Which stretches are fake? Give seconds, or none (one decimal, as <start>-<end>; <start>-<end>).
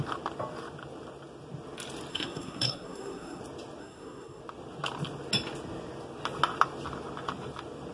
2.1-3.4; 3.8-4.4